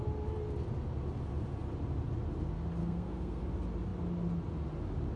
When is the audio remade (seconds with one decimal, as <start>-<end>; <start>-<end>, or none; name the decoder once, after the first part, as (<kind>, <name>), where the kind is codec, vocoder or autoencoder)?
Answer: 2.8-3.4 (codec, SNAC)